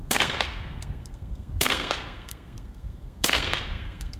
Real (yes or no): no